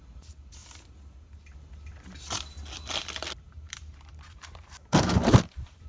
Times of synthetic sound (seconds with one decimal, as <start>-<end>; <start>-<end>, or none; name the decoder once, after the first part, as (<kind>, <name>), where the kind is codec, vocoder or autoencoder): 0.0-0.6 (vocoder, BigVGAN v2); 3.4-5.9